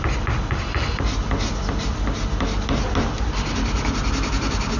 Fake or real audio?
real